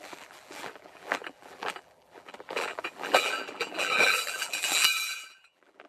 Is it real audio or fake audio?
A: fake